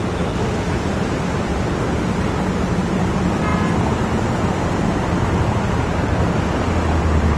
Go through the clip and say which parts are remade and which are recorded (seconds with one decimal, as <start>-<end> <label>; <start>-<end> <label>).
0.0-7.4 recorded